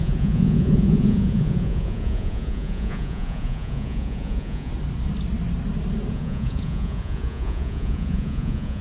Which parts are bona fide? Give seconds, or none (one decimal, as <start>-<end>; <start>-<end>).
4.7-6.1